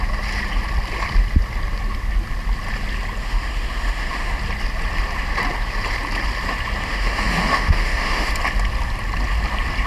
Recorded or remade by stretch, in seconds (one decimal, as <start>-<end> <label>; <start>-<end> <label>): 0.0-3.2 recorded; 3.2-4.4 remade; 4.4-6.8 recorded; 6.8-8.3 remade; 8.3-9.9 recorded

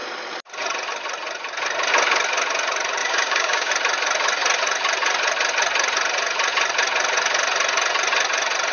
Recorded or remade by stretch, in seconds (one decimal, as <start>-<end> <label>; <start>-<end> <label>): 0.0-3.0 recorded; 3.0-3.7 remade; 3.7-8.7 recorded

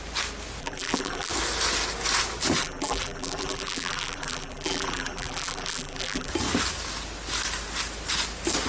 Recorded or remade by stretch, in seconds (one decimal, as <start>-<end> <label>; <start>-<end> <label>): 0.0-0.6 recorded; 0.6-1.3 remade; 1.3-2.6 recorded; 2.6-6.3 remade; 6.3-8.7 recorded

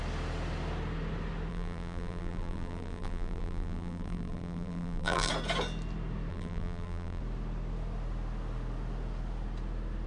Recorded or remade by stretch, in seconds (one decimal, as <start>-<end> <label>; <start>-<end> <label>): 0.0-1.5 recorded; 1.5-5.3 remade; 5.3-6.3 recorded; 6.3-7.2 remade; 7.2-10.1 recorded

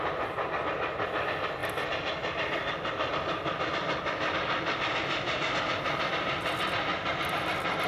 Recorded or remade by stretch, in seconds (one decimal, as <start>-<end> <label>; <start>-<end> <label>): 0.0-7.9 recorded

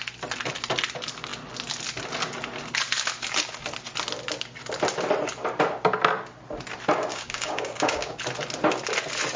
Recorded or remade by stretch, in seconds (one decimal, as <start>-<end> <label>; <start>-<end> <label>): 0.0-7.1 recorded; 7.1-8.2 remade; 8.2-9.4 recorded

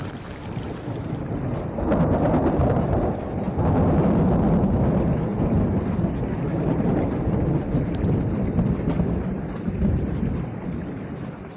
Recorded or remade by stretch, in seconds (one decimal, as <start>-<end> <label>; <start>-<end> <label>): 0.0-11.6 recorded

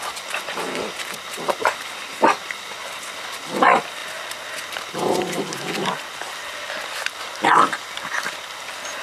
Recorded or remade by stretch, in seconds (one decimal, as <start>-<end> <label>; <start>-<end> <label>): 0.0-9.0 recorded